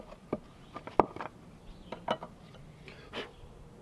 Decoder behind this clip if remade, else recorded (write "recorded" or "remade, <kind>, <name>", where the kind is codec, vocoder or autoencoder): recorded